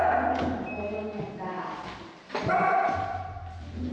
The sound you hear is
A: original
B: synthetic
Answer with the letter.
A